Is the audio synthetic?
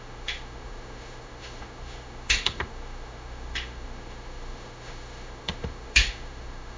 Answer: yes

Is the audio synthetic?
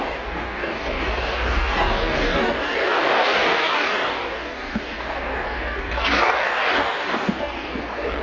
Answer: yes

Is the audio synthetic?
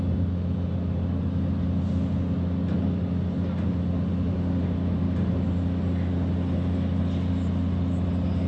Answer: no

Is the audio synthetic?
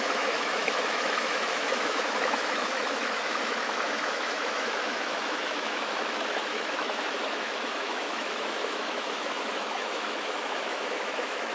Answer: yes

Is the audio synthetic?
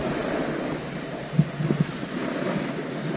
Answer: no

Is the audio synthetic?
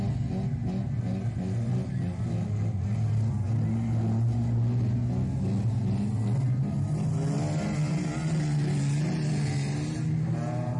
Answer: no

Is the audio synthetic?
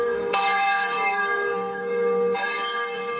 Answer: yes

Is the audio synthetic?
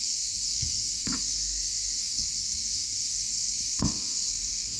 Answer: yes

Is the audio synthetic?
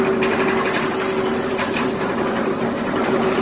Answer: no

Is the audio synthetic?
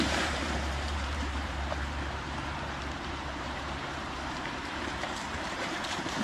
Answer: yes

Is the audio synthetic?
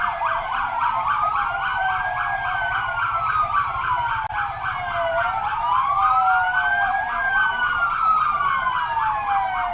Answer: no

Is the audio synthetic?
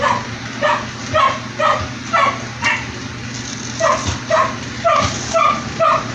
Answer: no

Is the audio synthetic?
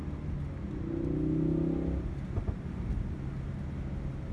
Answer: no